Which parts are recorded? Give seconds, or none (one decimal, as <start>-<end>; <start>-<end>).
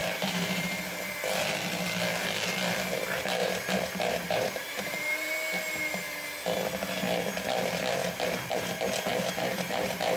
0.8-3.4; 5.3-8.0; 8.7-9.1